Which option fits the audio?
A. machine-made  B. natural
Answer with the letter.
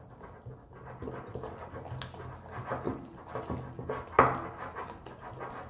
B